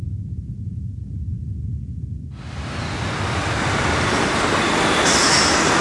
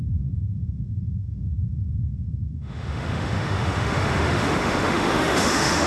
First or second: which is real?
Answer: first